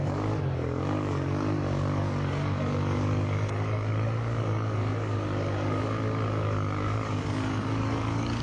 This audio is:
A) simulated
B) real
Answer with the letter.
A